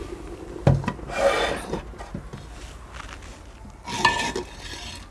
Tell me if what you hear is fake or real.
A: real